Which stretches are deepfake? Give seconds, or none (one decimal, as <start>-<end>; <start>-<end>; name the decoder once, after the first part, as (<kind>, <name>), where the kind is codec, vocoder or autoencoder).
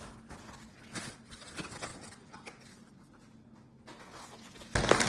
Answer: none